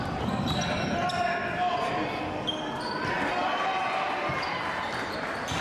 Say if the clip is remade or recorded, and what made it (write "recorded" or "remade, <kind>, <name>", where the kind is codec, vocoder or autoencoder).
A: recorded